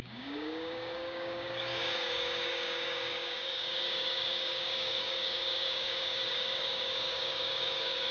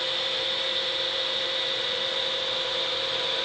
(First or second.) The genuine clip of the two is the second